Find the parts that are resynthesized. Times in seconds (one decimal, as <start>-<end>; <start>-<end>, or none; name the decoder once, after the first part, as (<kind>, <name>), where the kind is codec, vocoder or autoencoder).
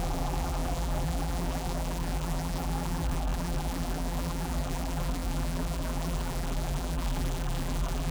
0.0-8.1 (vocoder, BigVGAN v2)